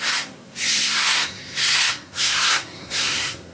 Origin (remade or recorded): remade